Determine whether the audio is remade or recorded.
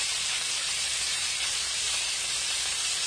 remade